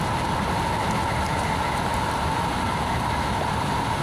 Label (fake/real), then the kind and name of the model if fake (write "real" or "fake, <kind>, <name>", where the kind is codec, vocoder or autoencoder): real